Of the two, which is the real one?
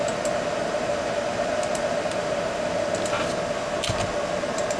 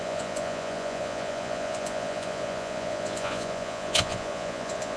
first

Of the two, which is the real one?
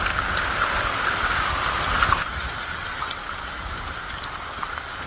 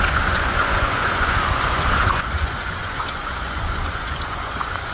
first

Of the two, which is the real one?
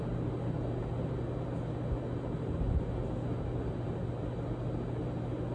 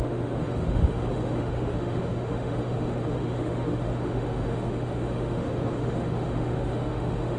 first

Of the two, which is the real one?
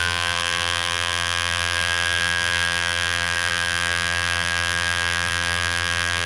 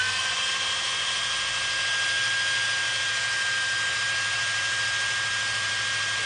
second